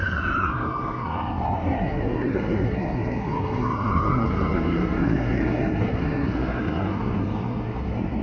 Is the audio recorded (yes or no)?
no